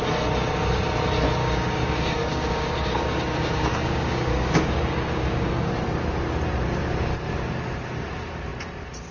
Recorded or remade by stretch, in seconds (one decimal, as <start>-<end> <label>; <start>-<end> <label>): 0.0-1.4 recorded; 1.4-5.7 remade; 5.7-9.1 recorded